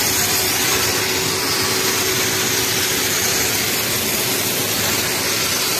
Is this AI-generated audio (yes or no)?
no